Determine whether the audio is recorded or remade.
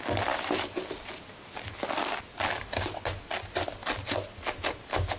recorded